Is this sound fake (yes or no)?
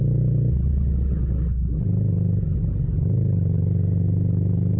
no